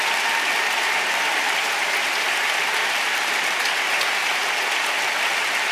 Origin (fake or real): real